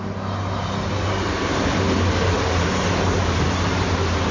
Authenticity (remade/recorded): recorded